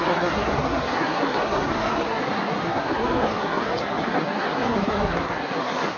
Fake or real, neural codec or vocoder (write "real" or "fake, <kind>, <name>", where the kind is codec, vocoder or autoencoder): fake, codec, SNAC